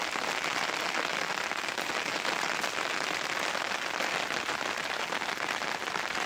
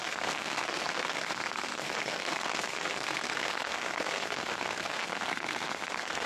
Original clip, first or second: first